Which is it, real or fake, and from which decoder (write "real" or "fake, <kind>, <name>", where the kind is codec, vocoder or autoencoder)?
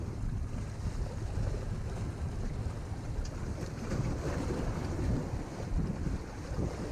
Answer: real